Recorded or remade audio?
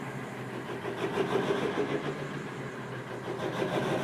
recorded